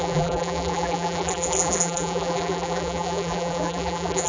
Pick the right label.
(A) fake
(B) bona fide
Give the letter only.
A